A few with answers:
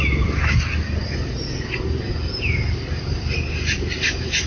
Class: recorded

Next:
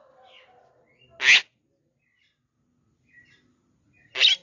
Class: recorded